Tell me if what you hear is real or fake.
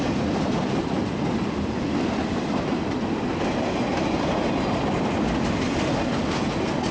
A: real